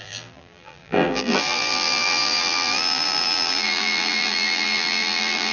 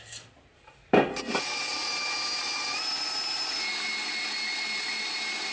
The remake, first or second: first